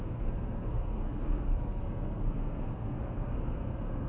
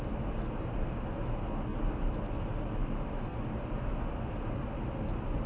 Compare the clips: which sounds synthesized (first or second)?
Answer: first